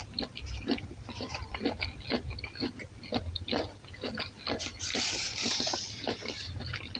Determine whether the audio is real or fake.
real